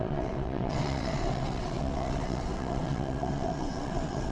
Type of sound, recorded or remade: remade